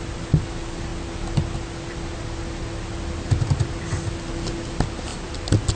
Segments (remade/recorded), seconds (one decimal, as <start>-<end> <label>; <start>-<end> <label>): 0.0-5.8 recorded